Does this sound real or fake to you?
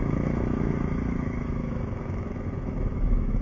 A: fake